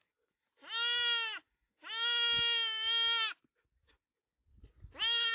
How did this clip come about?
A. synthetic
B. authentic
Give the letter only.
B